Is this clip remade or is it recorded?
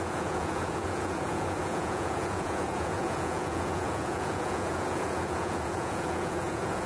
remade